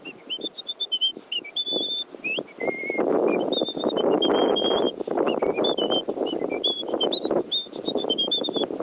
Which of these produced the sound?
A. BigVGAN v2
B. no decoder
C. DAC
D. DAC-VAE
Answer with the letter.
B